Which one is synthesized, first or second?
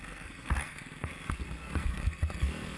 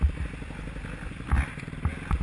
first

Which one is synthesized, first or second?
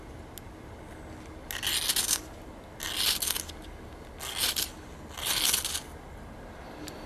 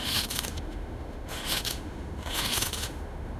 second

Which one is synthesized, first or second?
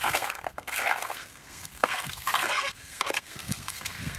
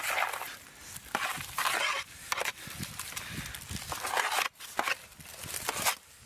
first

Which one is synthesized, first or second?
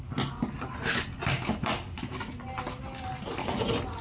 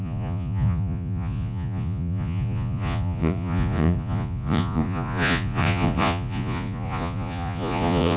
second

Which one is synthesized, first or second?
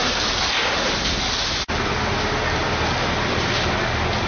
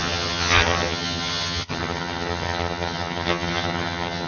second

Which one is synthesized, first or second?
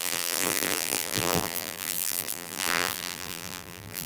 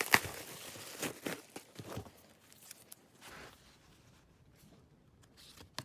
first